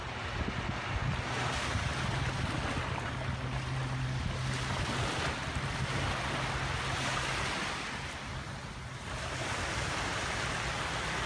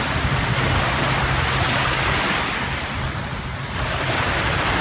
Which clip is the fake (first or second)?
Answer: second